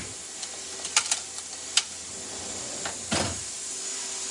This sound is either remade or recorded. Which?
recorded